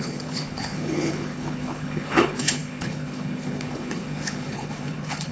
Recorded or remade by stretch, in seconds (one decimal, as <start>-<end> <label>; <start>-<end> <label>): 0.0-5.3 remade